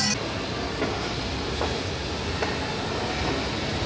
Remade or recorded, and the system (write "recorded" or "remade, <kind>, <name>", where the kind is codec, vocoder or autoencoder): recorded